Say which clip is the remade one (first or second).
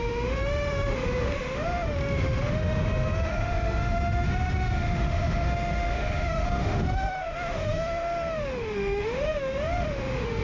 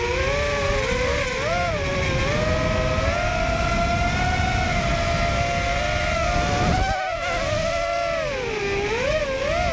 first